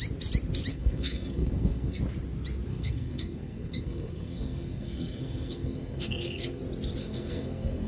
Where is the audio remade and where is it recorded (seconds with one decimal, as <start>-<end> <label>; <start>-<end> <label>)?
0.0-0.7 recorded; 0.7-2.0 remade; 2.0-2.7 recorded; 2.7-6.6 remade; 6.6-7.0 recorded; 7.0-7.9 remade